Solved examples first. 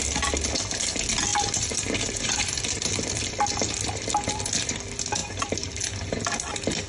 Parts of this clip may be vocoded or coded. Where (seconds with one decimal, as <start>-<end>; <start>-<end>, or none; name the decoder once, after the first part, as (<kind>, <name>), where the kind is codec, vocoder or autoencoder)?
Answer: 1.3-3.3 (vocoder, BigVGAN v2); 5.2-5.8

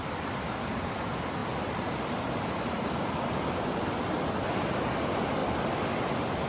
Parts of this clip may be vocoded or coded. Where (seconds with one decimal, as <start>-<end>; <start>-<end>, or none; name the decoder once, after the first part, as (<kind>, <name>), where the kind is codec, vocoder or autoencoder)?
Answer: none

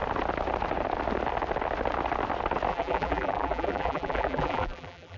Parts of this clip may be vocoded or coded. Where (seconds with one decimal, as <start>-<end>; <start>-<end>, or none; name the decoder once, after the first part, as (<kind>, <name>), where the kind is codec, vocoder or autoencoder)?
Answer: 2.7-5.2 (vocoder, BigVGAN v2)